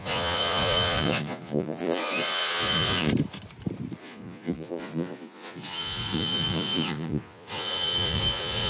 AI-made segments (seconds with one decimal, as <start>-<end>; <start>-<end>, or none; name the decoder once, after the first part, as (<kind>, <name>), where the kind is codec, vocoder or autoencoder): 0.0-3.1 (vocoder, Vocos); 4.0-8.7